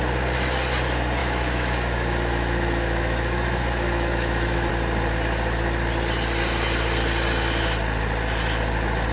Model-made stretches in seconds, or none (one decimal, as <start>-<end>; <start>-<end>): 1.2-4.7